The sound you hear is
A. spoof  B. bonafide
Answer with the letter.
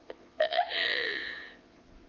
A